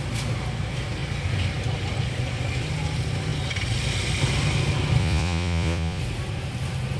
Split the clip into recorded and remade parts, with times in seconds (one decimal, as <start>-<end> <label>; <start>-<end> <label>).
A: 0.0-5.0 recorded; 5.0-6.0 remade; 6.0-7.0 recorded

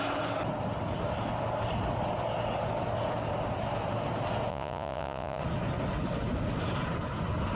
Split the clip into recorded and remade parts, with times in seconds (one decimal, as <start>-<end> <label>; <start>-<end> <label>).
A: 0.0-4.5 recorded; 4.5-5.4 remade; 5.4-7.6 recorded

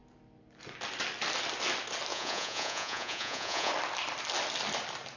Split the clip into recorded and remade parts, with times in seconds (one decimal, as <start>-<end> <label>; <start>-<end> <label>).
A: 0.0-2.1 recorded; 2.1-3.7 remade; 3.7-5.2 recorded

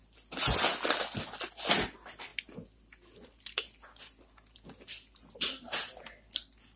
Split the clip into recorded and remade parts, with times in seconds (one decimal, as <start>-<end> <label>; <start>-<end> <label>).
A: 0.0-6.8 recorded

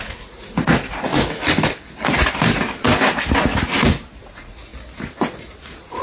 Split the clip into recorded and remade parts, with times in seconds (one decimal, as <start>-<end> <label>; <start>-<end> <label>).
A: 0.0-1.1 remade; 1.1-4.2 recorded; 4.2-4.7 remade; 4.7-5.6 recorded; 5.6-6.0 remade

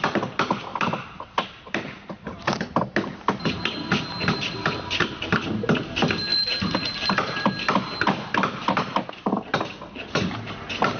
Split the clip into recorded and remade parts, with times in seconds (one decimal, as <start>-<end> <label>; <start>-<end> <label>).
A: 0.0-0.7 recorded; 0.7-2.5 remade; 2.5-6.3 recorded; 6.3-7.6 remade; 7.6-11.0 recorded

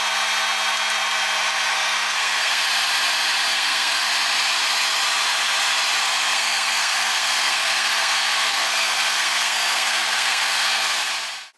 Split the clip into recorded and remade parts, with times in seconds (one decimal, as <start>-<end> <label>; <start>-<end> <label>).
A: 0.0-1.7 recorded; 1.7-2.6 remade; 2.6-3.5 recorded; 3.5-4.1 remade; 4.1-6.0 recorded; 6.0-11.1 remade; 11.1-11.6 recorded